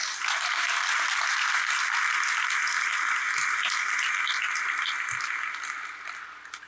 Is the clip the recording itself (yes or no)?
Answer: yes